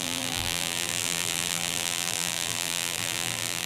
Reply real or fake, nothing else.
fake